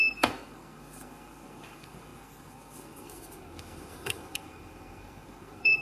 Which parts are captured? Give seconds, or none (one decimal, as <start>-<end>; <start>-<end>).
none

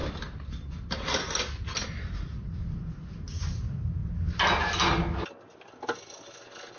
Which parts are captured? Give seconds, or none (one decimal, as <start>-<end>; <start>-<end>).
0.0-6.8